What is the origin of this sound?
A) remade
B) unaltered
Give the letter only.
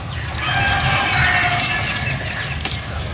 B